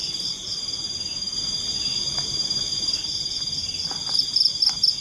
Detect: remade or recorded recorded